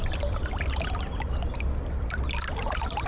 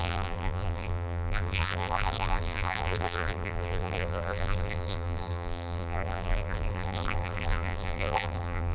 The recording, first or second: first